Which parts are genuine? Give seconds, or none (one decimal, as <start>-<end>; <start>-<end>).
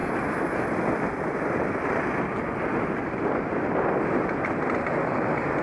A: 1.4-5.6